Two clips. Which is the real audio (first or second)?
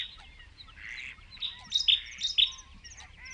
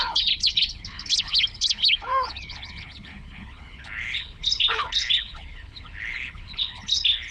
first